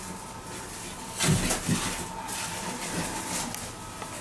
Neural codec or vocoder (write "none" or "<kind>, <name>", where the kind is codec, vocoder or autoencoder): none